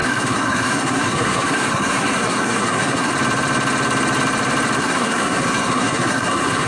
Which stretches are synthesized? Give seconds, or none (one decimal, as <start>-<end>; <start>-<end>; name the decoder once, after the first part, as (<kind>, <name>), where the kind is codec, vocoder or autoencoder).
0.0-3.1 (codec, SNAC); 4.8-6.7